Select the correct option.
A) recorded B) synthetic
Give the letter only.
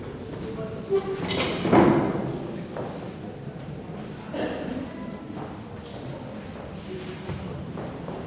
A